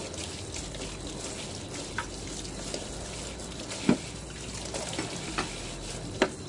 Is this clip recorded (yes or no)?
yes